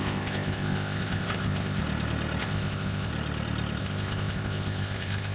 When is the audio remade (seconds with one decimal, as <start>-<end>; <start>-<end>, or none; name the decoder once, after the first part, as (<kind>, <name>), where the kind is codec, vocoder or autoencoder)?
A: 0.0-1.8 (codec, ZipCodec); 2.4-3.1; 3.8-5.3